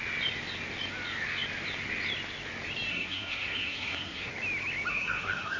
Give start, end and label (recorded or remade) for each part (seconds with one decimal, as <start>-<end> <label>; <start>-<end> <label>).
0.0-2.9 recorded; 2.9-4.3 remade; 4.3-4.9 recorded; 4.9-5.6 remade